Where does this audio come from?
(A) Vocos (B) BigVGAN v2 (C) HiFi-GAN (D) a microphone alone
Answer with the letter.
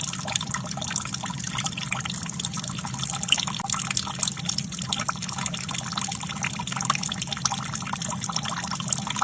D